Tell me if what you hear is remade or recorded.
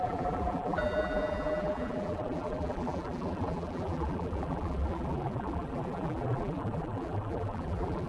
remade